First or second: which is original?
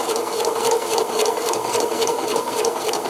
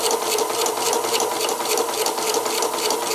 second